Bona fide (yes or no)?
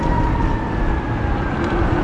yes